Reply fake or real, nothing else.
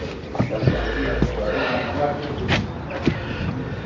real